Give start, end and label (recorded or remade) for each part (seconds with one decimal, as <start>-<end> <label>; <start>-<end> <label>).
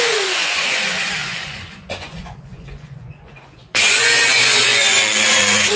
0.0-5.8 remade